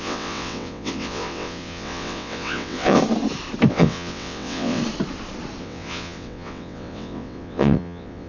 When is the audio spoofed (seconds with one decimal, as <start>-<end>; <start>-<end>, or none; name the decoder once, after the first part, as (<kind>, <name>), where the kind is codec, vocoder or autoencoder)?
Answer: 0.0-3.0 (vocoder, WaveNeXt); 3.7-4.8; 5.6-8.3